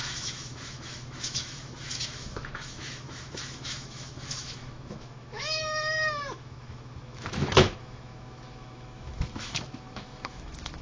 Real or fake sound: fake